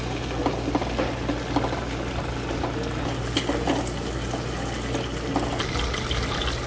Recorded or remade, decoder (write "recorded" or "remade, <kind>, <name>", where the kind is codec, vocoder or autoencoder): recorded